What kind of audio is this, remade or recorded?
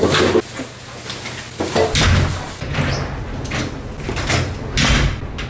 recorded